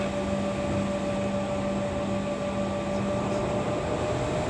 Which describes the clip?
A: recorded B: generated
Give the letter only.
A